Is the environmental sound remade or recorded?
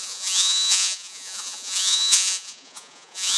remade